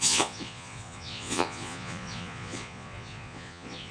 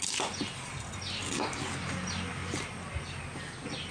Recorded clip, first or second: second